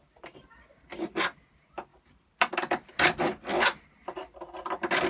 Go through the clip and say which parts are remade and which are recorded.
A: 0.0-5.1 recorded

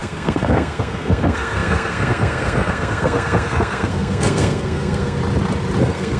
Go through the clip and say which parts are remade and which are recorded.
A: 0.0-5.2 remade; 5.2-5.8 recorded; 5.8-6.2 remade

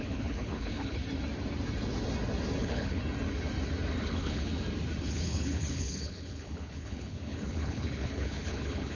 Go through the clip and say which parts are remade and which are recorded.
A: 0.0-1.0 remade; 1.0-2.6 recorded; 2.6-3.0 remade; 3.0-4.0 recorded; 4.0-4.5 remade; 4.5-5.0 recorded; 5.0-9.0 remade

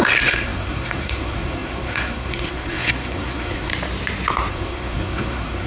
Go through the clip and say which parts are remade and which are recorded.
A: 0.0-3.7 remade; 3.7-4.5 recorded; 4.5-5.7 remade

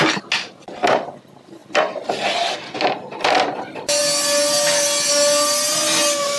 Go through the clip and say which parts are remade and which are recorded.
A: 0.0-6.4 recorded

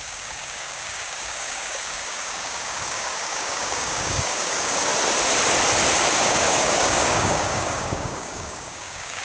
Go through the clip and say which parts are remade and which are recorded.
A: 0.0-4.9 remade; 4.9-6.1 recorded; 6.1-9.2 remade